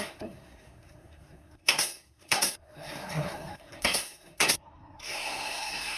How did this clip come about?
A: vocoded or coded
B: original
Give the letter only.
A